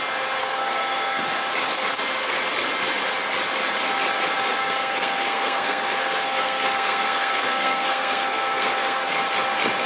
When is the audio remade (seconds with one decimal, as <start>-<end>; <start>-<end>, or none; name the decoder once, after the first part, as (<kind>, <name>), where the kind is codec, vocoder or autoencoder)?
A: 0.4-1.2 (codec, SNAC); 4.6-9.2